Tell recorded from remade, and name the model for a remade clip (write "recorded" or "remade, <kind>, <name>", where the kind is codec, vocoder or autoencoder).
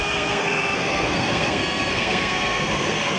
remade, codec, SNAC